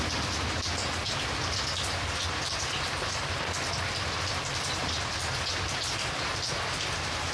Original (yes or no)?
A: yes